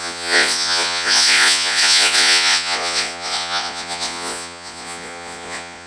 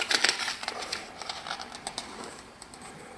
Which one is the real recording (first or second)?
second